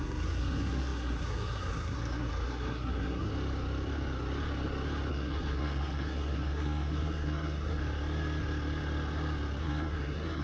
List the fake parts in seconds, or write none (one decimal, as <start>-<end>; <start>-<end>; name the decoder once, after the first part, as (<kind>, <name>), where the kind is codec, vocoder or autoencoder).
0.0-3.3 (codec, SNAC); 5.1-7.8; 9.6-10.4